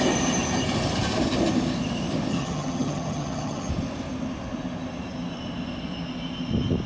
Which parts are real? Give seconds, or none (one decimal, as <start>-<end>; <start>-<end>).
0.0-2.3; 3.7-6.9